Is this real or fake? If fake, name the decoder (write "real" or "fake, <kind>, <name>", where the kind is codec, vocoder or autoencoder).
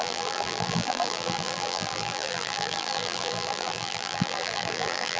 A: fake, vocoder, BigVGAN v2